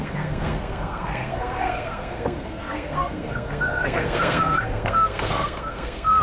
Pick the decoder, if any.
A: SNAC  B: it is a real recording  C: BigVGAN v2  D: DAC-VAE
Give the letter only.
A